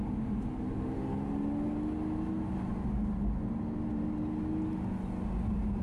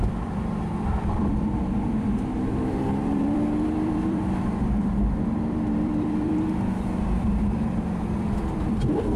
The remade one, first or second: second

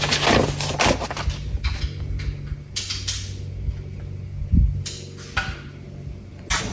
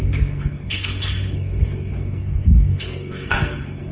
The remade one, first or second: second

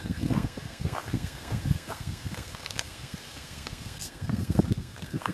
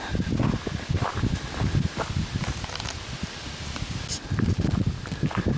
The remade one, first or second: first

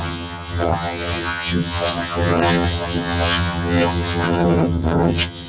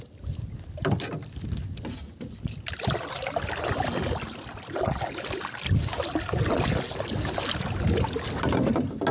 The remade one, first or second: first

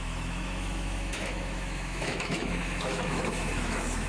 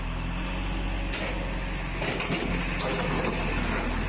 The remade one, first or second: first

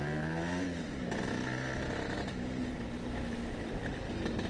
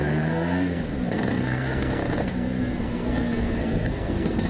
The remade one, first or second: second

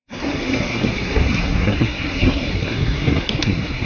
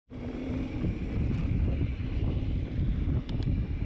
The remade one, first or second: first